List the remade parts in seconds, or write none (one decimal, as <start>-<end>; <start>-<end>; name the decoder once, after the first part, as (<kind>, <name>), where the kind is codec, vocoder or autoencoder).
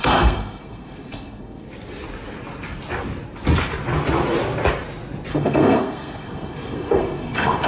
0.0-1.7 (codec, SNAC); 5.3-7.7